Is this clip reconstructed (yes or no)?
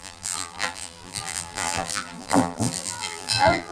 yes